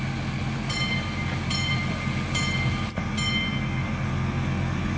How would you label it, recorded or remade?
recorded